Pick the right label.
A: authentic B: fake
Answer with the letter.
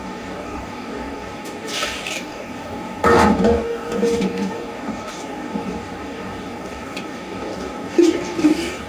B